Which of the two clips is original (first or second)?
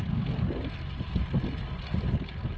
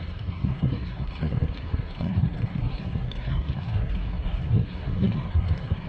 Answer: first